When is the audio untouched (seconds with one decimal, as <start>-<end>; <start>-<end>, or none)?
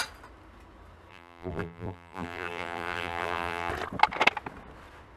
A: 0.0-1.1; 3.7-5.2